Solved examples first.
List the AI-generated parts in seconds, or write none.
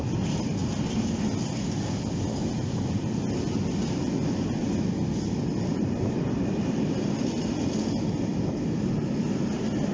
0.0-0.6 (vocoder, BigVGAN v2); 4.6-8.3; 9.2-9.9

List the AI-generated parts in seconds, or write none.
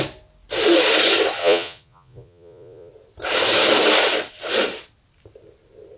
1.4-2.9 (vocoder, Vocos)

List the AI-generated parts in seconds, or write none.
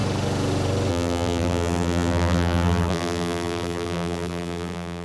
0.9-5.0 (vocoder, BigVGAN v2)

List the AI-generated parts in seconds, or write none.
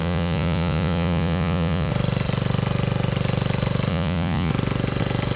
0.0-1.9 (vocoder, Vocos); 3.9-4.5